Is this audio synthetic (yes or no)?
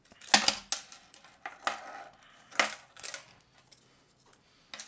no